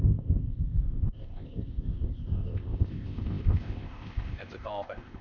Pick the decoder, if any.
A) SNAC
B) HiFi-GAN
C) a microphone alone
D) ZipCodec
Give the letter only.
D